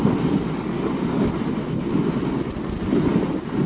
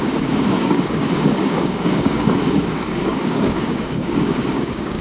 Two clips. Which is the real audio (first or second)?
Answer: first